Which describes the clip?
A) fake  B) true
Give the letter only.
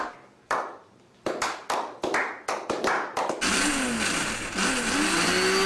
B